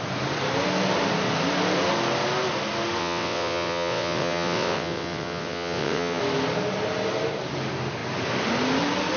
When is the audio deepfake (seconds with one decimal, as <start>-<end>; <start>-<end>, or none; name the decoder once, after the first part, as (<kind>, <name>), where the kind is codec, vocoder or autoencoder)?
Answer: 3.0-6.2 (vocoder, WaveNeXt)